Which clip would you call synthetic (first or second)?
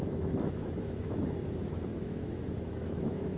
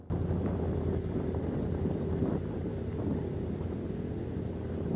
first